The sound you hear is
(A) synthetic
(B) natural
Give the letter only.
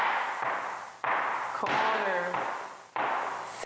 B